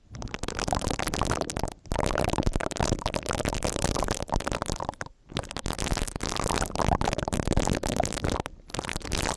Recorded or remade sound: remade